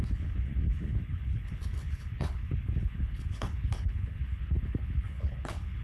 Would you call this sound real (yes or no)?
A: no